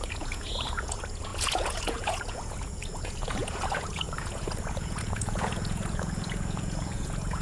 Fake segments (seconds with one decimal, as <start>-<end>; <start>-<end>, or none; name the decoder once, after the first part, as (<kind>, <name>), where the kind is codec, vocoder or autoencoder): 0.0-7.4 (vocoder, Vocos)